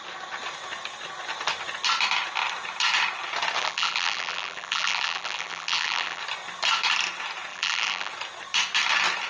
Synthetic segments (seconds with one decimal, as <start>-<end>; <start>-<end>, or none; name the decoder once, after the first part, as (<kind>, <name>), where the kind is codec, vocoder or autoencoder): 3.6-6.2 (vocoder, BigVGAN v2); 7.5-8.1